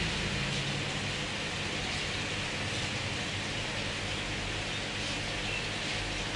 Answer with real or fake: real